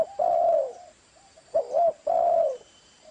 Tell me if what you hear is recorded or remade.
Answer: remade